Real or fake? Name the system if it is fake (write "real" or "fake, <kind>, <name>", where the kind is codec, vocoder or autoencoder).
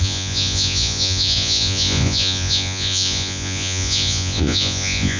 fake, vocoder, Vocos